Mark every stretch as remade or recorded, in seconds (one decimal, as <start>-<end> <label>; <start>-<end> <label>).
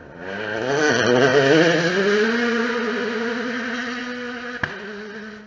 0.0-5.5 recorded